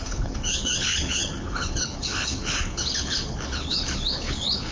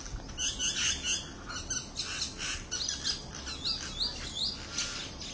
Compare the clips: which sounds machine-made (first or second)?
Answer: first